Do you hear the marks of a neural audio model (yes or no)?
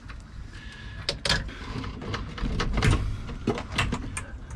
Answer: no